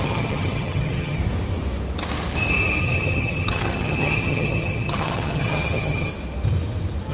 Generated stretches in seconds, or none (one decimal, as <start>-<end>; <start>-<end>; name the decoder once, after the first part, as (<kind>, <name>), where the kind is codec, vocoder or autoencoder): 0.0-1.2 (vocoder, HiFi-GAN); 2.8-6.1